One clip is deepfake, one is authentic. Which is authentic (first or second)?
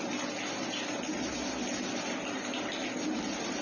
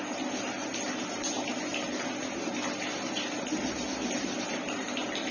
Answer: first